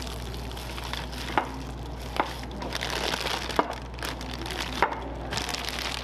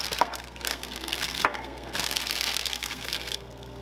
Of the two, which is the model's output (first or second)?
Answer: second